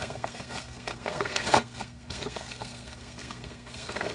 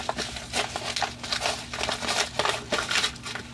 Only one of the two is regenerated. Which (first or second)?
first